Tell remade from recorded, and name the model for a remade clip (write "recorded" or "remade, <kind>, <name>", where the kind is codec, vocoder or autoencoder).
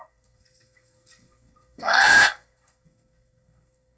remade, codec, SNAC